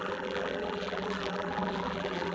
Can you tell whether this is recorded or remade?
remade